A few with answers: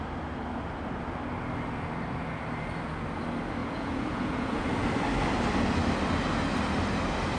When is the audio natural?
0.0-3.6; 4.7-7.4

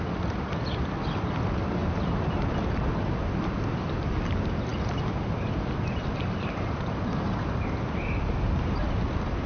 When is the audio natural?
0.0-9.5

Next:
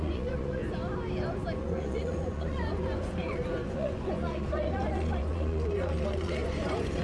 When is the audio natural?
0.6-1.6

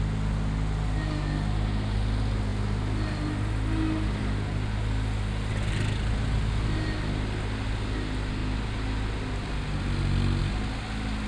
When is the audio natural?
0.0-11.3

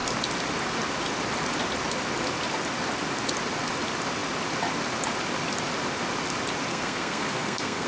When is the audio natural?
0.0-6.7

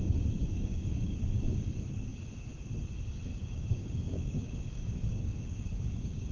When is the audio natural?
0.0-0.4; 1.7-3.3

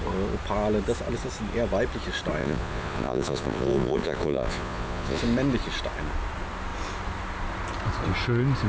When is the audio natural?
0.0-2.4; 5.2-8.7